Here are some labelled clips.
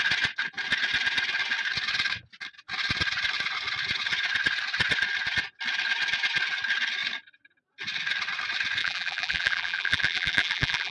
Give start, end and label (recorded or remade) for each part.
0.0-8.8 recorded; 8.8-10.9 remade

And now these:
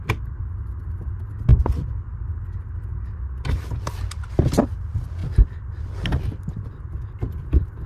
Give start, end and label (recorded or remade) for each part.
0.0-5.2 recorded; 5.2-7.2 remade; 7.2-7.9 recorded

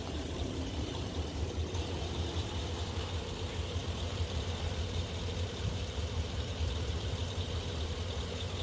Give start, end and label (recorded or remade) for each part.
0.0-8.6 remade

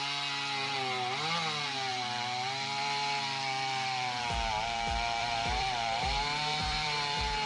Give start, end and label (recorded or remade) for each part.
0.0-1.9 recorded; 1.9-4.2 remade; 4.2-5.2 recorded; 5.2-7.5 remade

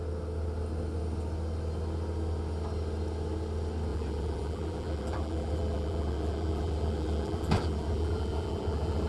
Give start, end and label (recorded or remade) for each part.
0.0-3.9 recorded; 3.9-9.1 remade

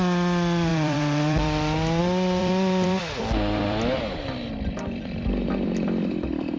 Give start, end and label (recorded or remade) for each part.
0.0-0.7 recorded; 0.7-2.0 remade; 2.0-2.4 recorded; 2.4-6.6 remade